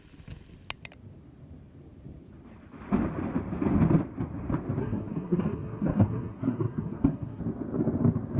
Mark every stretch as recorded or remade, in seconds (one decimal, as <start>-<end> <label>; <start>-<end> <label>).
0.0-4.8 recorded; 4.8-7.4 remade; 7.4-8.4 recorded

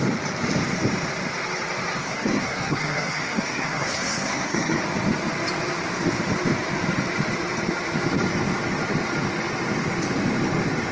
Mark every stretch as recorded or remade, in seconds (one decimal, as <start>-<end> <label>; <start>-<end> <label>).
0.0-2.0 recorded; 2.0-4.8 remade; 4.8-10.9 recorded